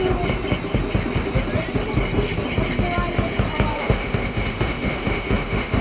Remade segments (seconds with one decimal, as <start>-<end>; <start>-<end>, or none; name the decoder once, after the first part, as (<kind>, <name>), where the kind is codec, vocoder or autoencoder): 3.7-5.8 (autoencoder, DAC-VAE)

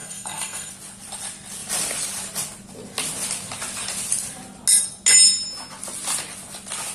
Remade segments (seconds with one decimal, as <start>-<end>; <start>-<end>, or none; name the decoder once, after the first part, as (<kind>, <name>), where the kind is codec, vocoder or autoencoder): 0.0-0.7 (codec, SNAC)